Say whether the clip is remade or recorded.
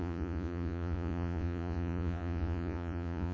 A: remade